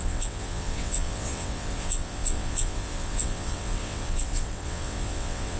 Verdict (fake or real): fake